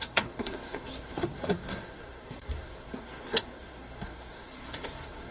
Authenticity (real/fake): fake